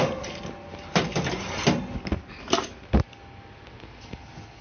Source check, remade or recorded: recorded